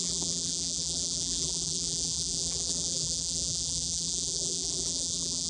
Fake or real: fake